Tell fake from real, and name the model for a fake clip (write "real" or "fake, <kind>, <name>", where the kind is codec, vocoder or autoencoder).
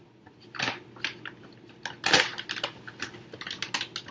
real